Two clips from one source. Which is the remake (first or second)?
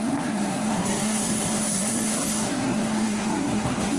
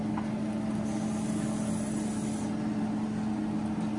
first